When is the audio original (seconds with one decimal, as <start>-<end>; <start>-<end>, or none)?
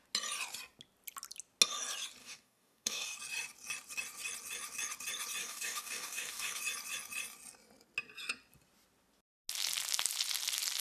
0.0-2.2; 3.2-5.4; 6.6-10.8